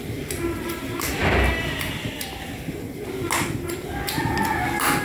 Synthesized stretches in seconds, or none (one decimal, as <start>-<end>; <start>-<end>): none